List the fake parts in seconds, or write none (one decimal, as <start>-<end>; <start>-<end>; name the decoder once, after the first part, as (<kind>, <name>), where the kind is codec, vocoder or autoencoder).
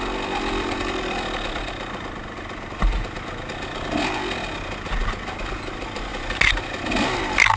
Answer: none